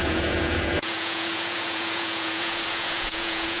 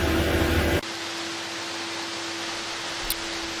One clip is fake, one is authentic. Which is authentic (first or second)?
second